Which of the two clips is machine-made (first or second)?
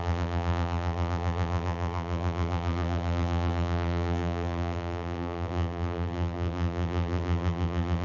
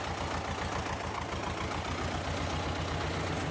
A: first